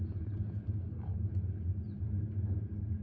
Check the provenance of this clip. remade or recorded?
remade